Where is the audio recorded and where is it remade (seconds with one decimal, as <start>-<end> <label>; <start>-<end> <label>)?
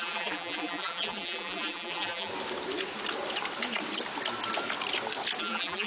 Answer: 0.0-2.3 remade; 2.3-5.4 recorded; 5.4-5.9 remade